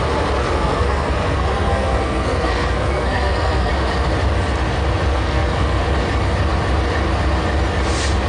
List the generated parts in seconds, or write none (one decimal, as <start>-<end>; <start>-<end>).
0.4-3.7; 5.1-5.8